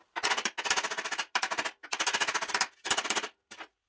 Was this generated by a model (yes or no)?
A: no